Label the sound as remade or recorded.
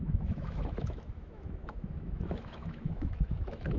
remade